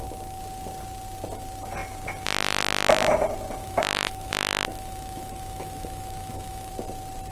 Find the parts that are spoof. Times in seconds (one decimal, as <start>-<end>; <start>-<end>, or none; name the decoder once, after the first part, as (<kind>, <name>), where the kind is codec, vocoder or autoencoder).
3.6-6.7 (autoencoder, DAC-VAE)